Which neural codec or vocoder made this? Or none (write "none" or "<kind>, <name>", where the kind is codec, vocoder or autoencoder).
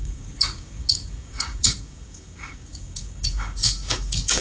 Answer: codec, DAC